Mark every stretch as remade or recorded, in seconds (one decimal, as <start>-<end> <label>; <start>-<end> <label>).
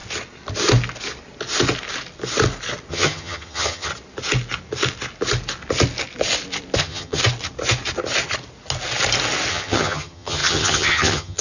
0.0-2.9 recorded; 2.9-3.9 remade; 3.9-6.8 recorded; 6.8-7.2 remade; 7.2-9.5 recorded; 9.5-11.4 remade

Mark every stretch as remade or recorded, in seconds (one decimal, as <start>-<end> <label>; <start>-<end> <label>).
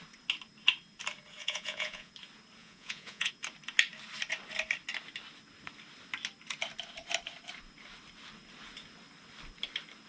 0.0-1.4 recorded; 1.4-2.1 remade; 2.1-2.6 recorded; 2.6-3.3 remade; 3.3-10.1 recorded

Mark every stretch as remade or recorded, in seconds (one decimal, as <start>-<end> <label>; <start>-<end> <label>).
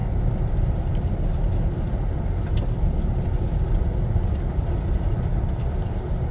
0.0-6.3 recorded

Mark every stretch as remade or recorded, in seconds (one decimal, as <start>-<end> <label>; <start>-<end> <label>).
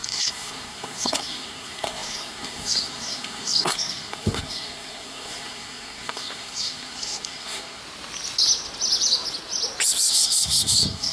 0.0-7.8 remade; 7.8-10.1 recorded; 10.1-11.1 remade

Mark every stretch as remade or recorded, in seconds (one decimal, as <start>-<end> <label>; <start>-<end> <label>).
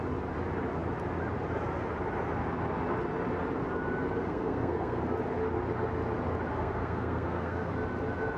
0.0-4.2 recorded; 4.2-5.0 remade; 5.0-6.5 recorded; 6.5-7.7 remade; 7.7-8.4 recorded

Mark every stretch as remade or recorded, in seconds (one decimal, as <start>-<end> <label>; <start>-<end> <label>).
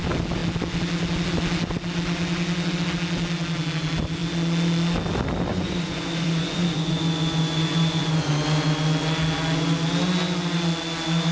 0.0-5.5 recorded; 5.5-8.3 remade; 8.3-11.3 recorded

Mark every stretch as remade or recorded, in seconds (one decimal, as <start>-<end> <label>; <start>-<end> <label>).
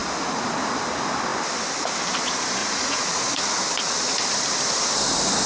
0.0-0.5 remade; 0.5-2.6 recorded; 2.6-3.5 remade; 3.5-5.5 recorded